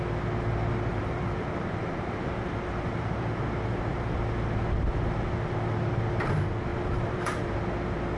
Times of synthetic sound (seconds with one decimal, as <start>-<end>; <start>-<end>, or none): 0.9-3.3; 6.7-7.6